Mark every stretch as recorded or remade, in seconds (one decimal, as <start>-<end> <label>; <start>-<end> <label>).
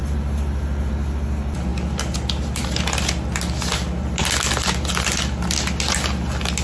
0.0-6.6 recorded